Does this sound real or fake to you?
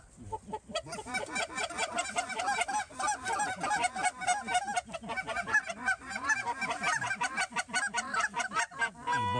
real